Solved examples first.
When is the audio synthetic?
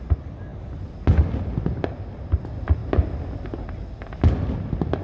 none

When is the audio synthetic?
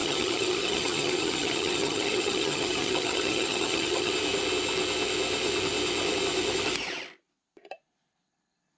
0.0-4.1 (vocoder, HiFi-GAN)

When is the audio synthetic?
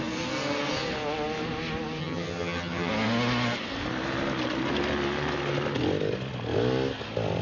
2.0-2.9 (vocoder, HiFi-GAN)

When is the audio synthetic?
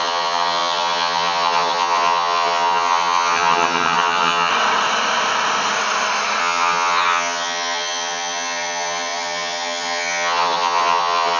0.0-4.5 (vocoder, HiFi-GAN); 6.4-11.4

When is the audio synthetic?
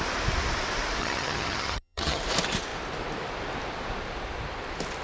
1.0-2.2 (vocoder, HiFi-GAN)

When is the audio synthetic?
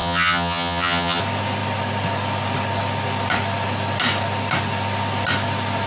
0.0-1.2 (vocoder, HiFi-GAN)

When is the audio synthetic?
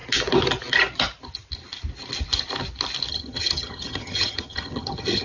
3.1-5.2 (vocoder, HiFi-GAN)